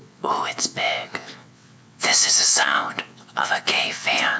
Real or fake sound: fake